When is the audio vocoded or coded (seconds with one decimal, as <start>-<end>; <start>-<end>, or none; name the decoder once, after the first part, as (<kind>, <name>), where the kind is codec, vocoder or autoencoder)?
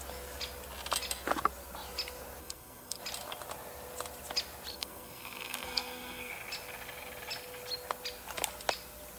2.4-3.0 (codec, SNAC); 4.7-6.3